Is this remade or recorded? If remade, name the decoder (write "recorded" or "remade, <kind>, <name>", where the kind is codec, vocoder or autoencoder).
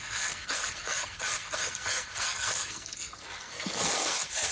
remade, codec, SNAC